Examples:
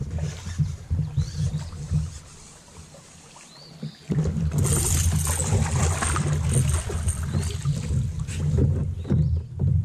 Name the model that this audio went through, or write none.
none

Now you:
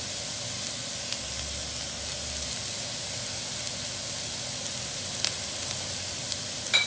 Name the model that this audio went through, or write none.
none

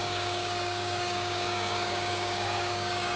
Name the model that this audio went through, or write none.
codec, DAC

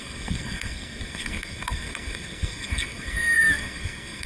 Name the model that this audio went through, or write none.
codec, SNAC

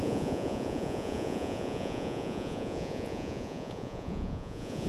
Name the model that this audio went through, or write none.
vocoder, Vocos